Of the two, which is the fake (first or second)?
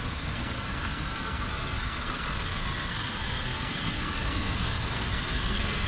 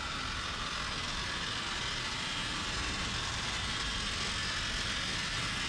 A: first